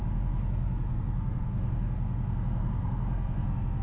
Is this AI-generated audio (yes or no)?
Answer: yes